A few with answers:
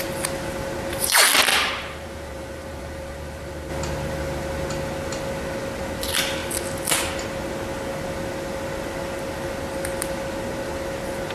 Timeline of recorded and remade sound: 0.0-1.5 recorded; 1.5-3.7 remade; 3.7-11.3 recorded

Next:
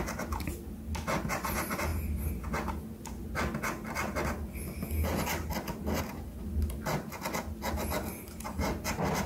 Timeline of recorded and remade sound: 0.0-9.3 recorded

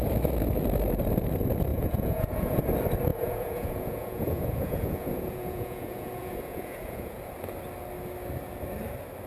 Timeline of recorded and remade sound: 0.0-1.7 recorded; 1.7-2.6 remade; 2.6-3.1 recorded; 3.1-7.2 remade; 7.2-9.3 recorded